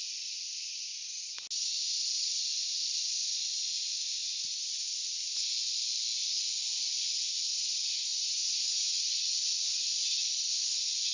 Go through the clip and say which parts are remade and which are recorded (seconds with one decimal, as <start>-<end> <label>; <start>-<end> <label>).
0.0-4.2 recorded; 4.2-4.7 remade; 4.7-8.1 recorded; 8.1-9.0 remade; 9.0-11.1 recorded